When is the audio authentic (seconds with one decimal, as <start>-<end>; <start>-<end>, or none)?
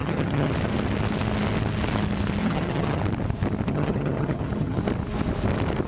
0.5-2.4; 3.0-3.7; 4.8-5.9